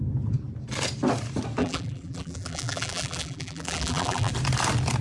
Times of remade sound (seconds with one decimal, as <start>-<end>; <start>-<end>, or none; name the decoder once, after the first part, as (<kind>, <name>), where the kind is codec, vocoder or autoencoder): 1.6-4.3 (vocoder, BigVGAN v2)